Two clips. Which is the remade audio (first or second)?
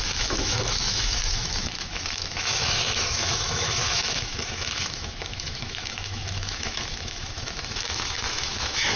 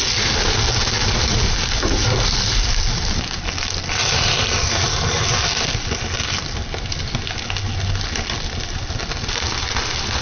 first